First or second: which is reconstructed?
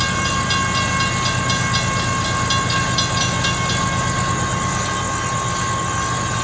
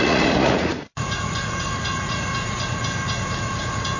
second